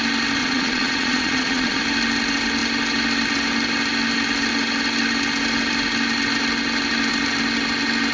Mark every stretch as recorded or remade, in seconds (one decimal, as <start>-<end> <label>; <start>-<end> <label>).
0.0-0.4 recorded; 0.4-1.8 remade; 1.8-8.1 recorded